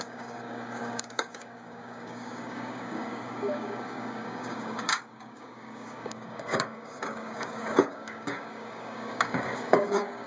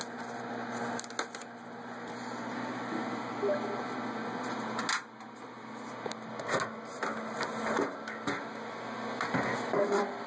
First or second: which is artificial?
first